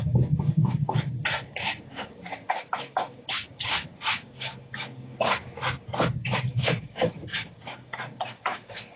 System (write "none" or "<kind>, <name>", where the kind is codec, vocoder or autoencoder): codec, DAC